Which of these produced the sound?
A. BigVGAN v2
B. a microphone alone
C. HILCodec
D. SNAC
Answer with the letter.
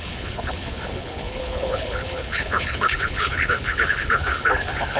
C